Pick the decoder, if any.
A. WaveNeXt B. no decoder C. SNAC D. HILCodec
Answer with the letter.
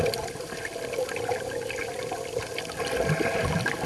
B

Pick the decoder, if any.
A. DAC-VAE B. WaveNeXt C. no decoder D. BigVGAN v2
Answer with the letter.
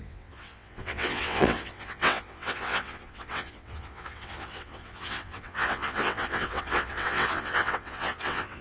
B